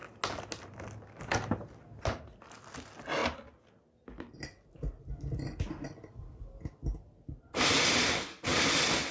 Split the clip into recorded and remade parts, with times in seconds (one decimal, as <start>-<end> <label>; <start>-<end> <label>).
0.0-9.1 recorded